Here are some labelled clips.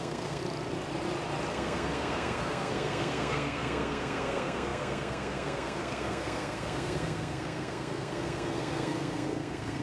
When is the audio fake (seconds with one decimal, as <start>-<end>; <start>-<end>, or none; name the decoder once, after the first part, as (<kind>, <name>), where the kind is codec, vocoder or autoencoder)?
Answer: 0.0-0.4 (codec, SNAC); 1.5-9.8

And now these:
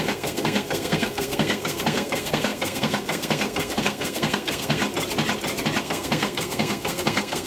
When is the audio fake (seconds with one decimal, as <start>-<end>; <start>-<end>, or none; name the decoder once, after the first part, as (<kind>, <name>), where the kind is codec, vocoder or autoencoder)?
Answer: 0.0-4.8 (codec, SNAC); 5.8-7.5

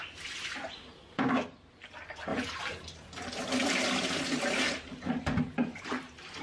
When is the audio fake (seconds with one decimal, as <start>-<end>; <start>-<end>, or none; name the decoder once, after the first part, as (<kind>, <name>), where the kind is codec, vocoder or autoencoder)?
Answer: 2.3-5.1 (vocoder, BigVGAN v2); 5.6-6.4

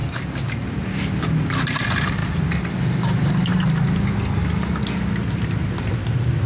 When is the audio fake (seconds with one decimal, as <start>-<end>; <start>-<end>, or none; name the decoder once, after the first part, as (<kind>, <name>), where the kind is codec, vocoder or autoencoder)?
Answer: 1.4-2.2 (vocoder, BigVGAN v2); 2.7-3.5; 5.8-6.5

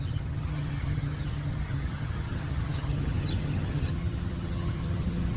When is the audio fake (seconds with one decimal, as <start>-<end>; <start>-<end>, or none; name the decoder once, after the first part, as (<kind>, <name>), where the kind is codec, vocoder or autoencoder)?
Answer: 0.0-5.4 (vocoder, HiFi-GAN)

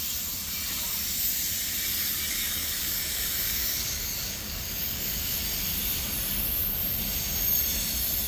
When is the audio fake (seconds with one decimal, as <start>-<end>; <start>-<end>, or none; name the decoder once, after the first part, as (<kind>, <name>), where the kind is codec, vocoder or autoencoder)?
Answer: 2.3-5.4 (codec, DAC)

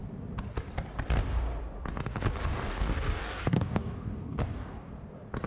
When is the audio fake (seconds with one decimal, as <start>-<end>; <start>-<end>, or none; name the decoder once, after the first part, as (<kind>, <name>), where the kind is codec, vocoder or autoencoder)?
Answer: 2.5-4.9 (codec, DAC)

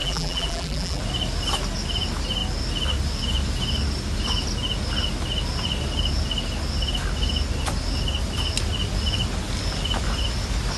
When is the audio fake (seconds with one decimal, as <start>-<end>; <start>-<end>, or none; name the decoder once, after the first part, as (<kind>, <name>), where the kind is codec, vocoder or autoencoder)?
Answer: 0.0-1.0 (vocoder, BigVGAN v2)